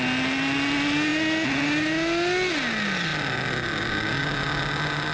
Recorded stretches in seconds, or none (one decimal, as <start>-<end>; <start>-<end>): 0.0-5.1